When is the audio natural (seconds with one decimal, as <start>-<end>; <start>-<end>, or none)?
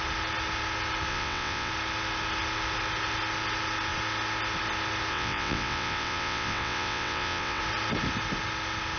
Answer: 0.0-1.1; 1.7-5.1; 7.6-9.0